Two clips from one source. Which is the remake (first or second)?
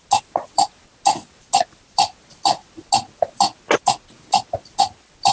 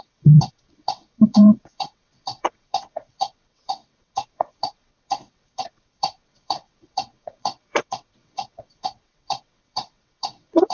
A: second